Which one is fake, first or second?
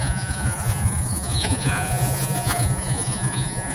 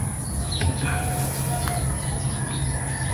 first